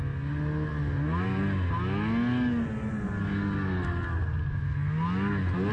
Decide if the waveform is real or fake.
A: real